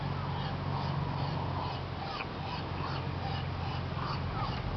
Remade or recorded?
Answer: recorded